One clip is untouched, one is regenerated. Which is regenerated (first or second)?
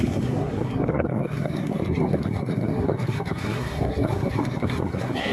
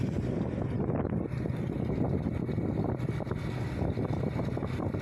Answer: first